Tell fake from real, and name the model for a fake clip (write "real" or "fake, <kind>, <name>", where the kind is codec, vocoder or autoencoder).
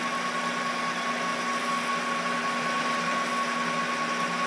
real